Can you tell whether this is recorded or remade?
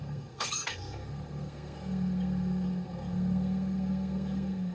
remade